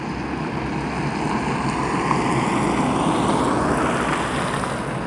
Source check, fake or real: real